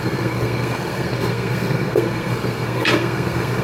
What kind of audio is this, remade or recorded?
remade